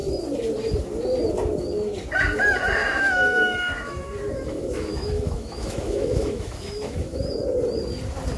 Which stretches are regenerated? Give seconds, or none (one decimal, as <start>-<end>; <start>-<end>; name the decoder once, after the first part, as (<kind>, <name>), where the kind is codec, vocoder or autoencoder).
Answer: 2.8-7.2 (autoencoder, DAC-VAE)